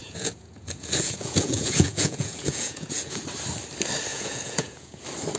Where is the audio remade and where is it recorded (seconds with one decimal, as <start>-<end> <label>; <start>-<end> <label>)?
0.0-3.2 remade; 3.2-4.1 recorded; 4.1-5.0 remade; 5.0-5.4 recorded